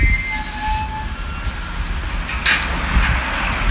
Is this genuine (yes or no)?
yes